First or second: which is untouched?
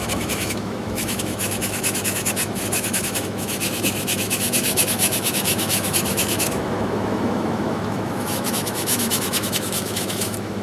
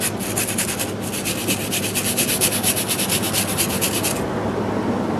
second